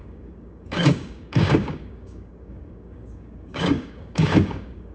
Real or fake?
fake